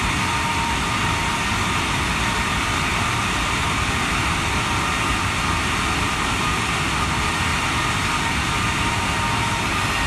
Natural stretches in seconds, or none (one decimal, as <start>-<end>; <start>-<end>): 0.0-2.9; 5.6-7.5; 8.9-10.1

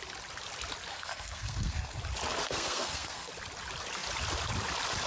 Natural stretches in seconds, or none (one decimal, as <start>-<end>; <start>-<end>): 0.0-0.9; 2.0-2.4; 3.3-5.1

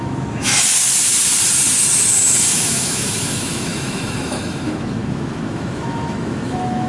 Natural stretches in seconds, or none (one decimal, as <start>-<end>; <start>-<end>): 0.5-2.5

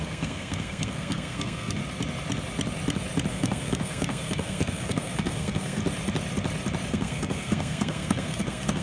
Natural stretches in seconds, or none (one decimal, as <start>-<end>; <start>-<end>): 1.8-3.3; 5.8-6.9

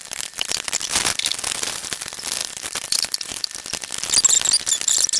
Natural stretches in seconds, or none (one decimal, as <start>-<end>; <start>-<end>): 0.7-2.4; 3.4-5.2

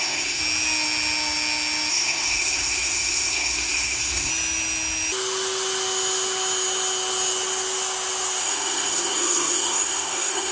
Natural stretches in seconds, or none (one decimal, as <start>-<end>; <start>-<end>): 0.4-1.9; 4.3-8.4

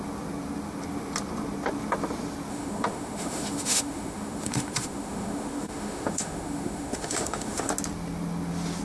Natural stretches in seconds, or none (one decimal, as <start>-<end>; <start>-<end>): 0.0-2.5; 7.7-8.8